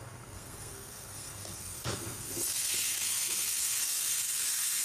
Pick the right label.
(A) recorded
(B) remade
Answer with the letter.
B